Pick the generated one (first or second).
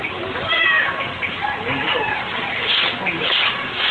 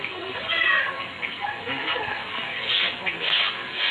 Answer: second